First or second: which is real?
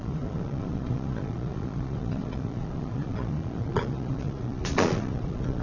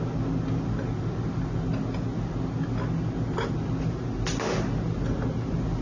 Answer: second